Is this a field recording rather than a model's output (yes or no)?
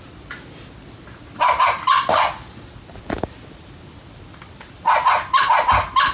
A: yes